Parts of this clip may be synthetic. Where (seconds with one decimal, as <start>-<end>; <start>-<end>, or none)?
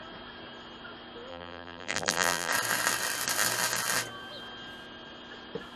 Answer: 1.3-2.5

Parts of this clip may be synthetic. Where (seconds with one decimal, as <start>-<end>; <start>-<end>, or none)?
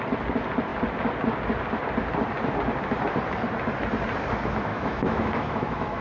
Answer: 4.7-6.0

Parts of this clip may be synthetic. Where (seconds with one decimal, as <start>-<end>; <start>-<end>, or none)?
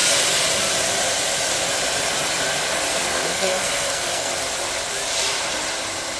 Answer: 2.9-4.3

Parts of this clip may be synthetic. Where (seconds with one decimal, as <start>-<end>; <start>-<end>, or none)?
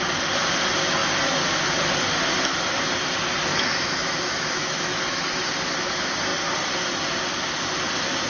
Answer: 3.5-5.3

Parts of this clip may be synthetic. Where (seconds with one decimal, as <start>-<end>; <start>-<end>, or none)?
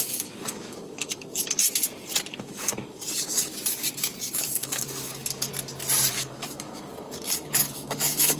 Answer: 0.0-1.6; 2.4-3.5; 4.2-5.5; 6.1-8.4